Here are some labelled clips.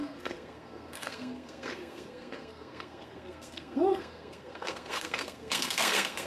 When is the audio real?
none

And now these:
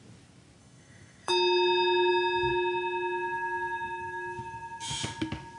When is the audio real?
0.0-0.6; 2.1-2.5; 5.0-5.6

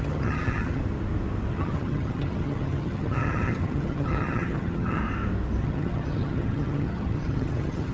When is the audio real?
0.8-1.5; 5.0-5.6

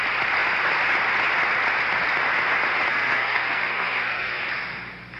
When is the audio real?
0.0-2.9; 4.4-5.2

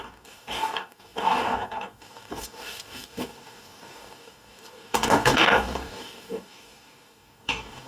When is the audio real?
none